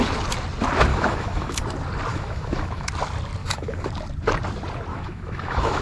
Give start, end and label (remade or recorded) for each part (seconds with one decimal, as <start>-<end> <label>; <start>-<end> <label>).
0.0-0.9 recorded; 0.9-1.6 remade; 1.6-2.1 recorded; 2.1-2.9 remade; 2.9-3.4 recorded; 3.4-3.9 remade; 3.9-4.9 recorded; 4.9-5.8 remade